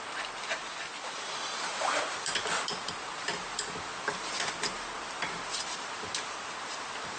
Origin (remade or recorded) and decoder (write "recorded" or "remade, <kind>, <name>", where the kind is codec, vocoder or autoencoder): recorded